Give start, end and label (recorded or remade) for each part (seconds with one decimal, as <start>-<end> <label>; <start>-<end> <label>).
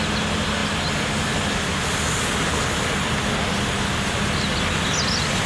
0.0-5.5 recorded